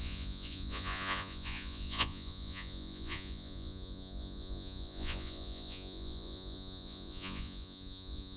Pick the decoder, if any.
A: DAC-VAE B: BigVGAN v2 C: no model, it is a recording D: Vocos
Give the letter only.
D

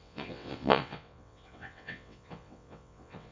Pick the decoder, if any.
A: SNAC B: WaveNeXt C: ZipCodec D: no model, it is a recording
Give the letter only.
B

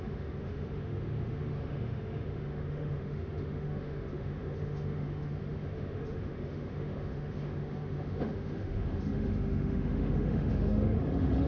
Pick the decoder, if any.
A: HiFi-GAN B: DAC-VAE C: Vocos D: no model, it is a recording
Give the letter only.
B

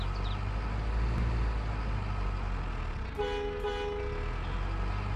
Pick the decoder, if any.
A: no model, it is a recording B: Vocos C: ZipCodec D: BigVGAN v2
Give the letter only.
A